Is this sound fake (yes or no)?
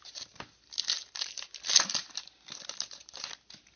no